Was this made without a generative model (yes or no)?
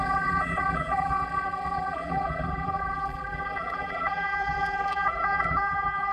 no